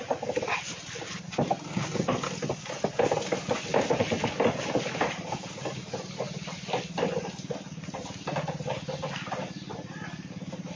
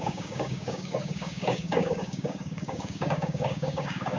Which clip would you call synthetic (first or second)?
second